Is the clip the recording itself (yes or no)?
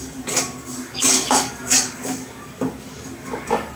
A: no